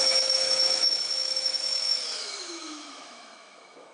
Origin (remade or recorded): remade